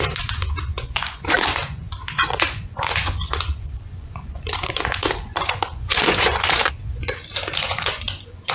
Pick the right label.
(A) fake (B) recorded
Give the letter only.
A